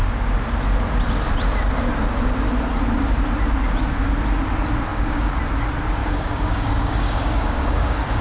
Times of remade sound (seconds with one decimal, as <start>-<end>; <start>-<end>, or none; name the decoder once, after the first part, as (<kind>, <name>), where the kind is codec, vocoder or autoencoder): 4.9-5.4 (codec, DAC); 6.0-8.2